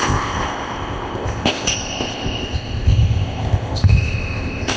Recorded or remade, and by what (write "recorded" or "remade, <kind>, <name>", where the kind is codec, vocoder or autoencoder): remade, codec, ZipCodec